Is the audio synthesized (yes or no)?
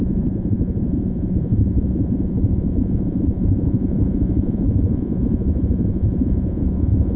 yes